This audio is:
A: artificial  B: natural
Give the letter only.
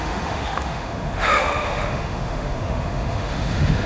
A